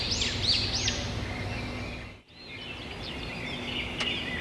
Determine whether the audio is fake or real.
real